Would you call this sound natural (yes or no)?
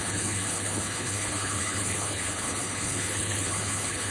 no